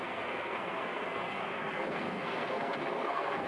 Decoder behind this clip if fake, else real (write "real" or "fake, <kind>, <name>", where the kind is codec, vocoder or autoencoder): fake, codec, SNAC